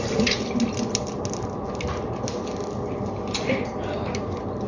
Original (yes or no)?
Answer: yes